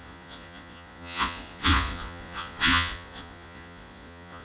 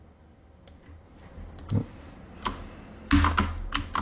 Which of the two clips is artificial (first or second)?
first